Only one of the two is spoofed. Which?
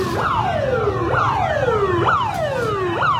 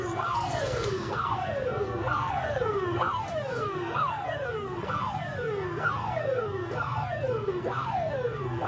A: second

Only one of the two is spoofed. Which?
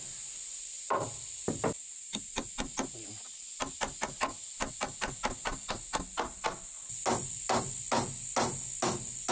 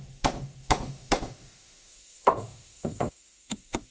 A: second